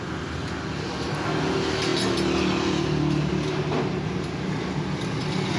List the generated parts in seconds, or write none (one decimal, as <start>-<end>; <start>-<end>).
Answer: none